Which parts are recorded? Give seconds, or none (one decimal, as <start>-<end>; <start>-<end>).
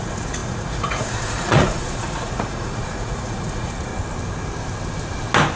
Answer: 3.9-5.6